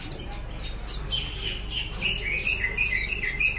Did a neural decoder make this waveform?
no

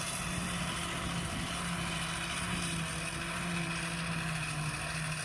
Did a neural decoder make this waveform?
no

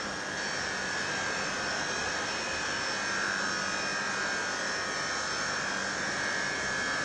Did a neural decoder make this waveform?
no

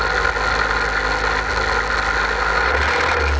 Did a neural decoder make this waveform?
no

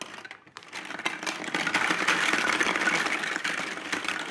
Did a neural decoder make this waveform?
no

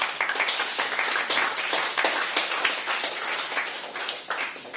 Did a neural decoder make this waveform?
no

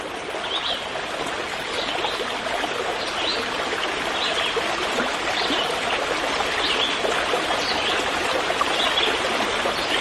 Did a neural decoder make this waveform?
no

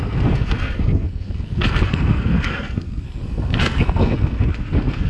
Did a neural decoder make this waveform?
yes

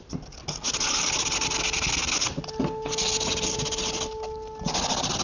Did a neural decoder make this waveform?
no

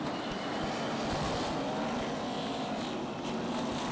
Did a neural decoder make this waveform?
no